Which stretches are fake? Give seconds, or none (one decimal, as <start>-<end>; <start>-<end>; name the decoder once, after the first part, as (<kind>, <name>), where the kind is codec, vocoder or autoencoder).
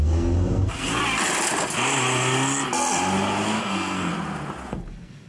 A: 0.0-1.0 (codec, SNAC); 3.6-4.1; 4.7-5.3